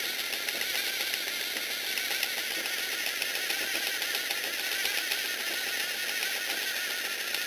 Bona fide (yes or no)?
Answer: yes